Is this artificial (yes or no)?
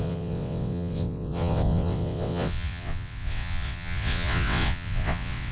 yes